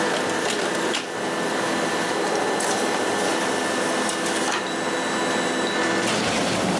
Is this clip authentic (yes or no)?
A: yes